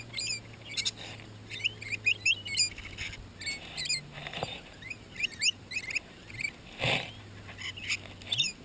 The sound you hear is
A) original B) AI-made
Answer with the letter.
A